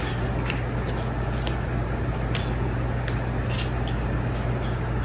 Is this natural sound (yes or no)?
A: yes